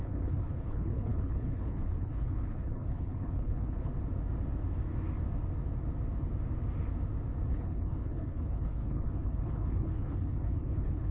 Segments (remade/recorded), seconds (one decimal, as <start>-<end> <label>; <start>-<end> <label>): 0.0-3.9 remade; 3.9-7.5 recorded; 7.5-11.1 remade